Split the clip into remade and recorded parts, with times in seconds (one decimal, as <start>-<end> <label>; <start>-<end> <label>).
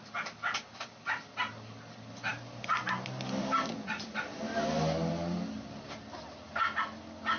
0.0-7.4 recorded